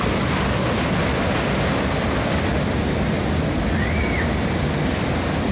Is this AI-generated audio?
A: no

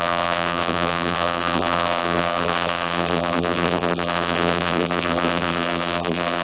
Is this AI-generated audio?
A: yes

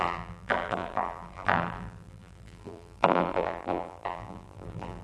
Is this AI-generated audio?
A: yes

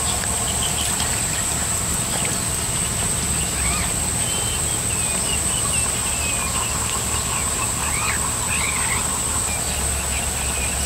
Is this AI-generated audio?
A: no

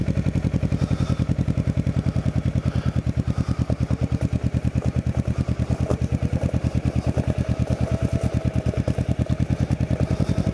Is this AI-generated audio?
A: no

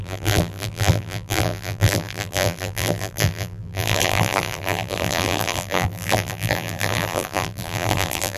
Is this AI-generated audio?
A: yes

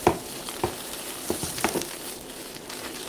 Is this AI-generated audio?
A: yes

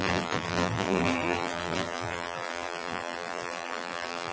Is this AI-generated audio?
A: yes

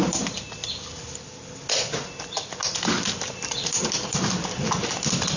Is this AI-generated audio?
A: no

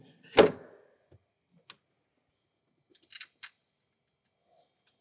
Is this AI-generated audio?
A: no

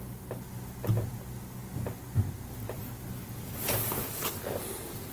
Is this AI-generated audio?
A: no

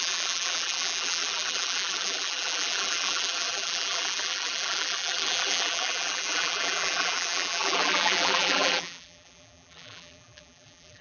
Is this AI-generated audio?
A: yes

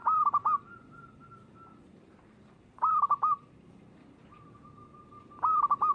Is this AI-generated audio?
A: yes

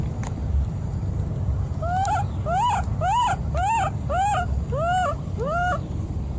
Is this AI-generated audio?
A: no